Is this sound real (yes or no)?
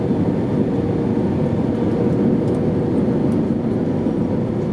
yes